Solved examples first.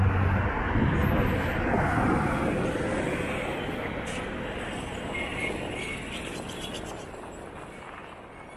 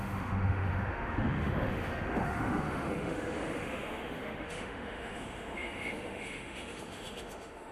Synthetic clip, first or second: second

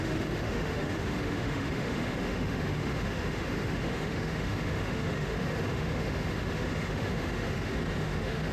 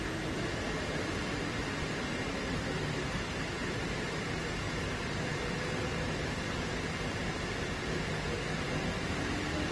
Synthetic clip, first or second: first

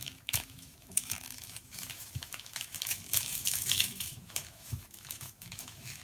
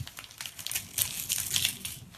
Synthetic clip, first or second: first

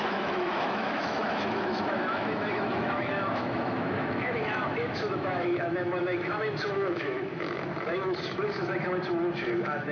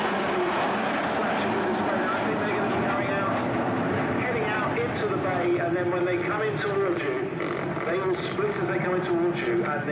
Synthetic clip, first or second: first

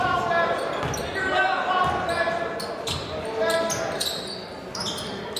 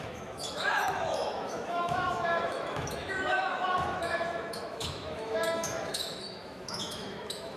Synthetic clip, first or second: second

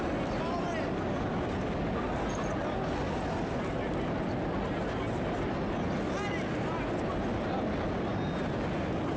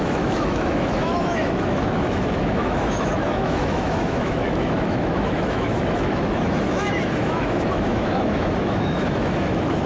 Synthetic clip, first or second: second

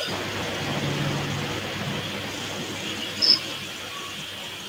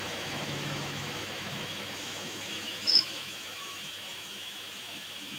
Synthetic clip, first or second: second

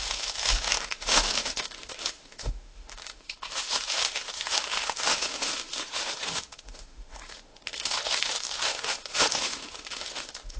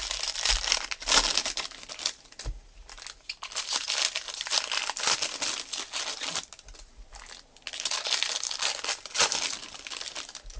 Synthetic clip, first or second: first